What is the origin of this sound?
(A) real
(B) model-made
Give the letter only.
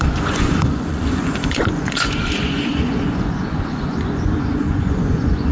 B